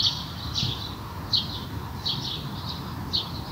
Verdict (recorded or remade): recorded